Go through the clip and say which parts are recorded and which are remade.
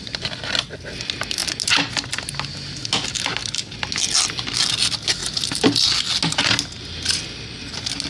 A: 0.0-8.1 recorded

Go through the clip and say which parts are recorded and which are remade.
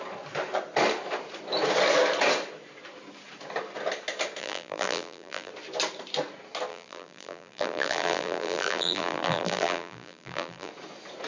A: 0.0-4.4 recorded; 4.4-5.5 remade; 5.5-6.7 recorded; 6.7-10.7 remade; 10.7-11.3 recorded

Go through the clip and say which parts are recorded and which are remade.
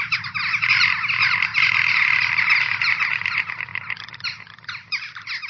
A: 0.0-5.5 recorded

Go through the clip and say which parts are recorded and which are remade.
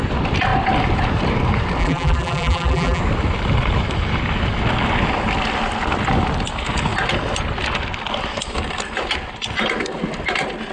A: 0.0-1.8 recorded; 1.8-3.0 remade; 3.0-10.7 recorded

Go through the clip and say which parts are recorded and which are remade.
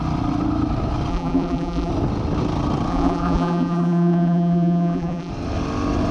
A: 0.0-1.1 recorded; 1.1-1.9 remade; 1.9-2.9 recorded; 2.9-5.3 remade; 5.3-6.1 recorded